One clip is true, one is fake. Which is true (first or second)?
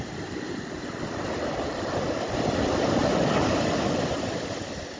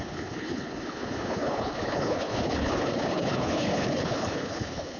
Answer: first